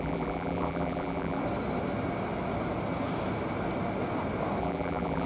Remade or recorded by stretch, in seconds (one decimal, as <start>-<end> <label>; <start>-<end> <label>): 0.0-1.4 remade; 1.4-4.6 recorded; 4.6-5.3 remade